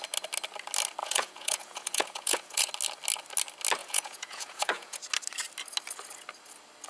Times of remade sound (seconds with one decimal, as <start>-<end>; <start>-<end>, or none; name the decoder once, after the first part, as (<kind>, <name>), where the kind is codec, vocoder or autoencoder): 1.0-2.7 (vocoder, Vocos); 3.8-5.0